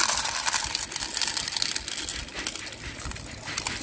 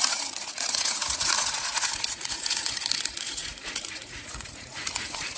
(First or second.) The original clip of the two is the first